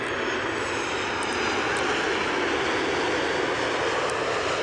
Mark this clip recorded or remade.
recorded